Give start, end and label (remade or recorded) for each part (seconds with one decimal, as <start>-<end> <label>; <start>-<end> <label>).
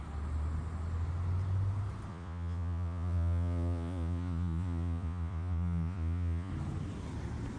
0.0-2.1 recorded; 2.1-6.5 remade; 6.5-7.6 recorded